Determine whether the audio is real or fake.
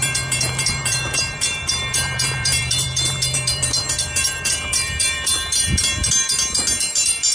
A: fake